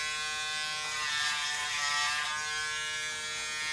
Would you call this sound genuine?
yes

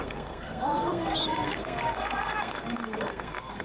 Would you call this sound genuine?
no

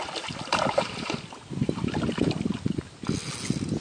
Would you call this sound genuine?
yes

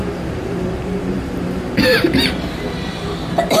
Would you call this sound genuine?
no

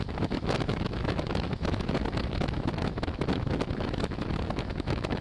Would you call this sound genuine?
no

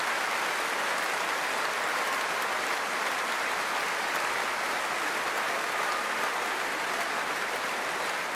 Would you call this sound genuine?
yes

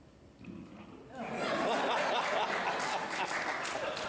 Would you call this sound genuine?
yes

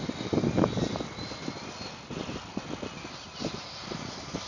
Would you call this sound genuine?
no